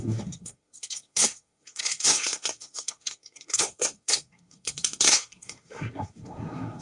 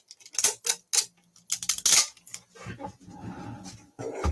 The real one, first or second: second